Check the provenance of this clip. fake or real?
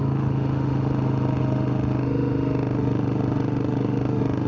fake